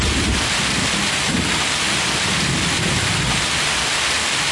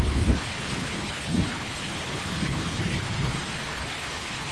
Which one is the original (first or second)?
first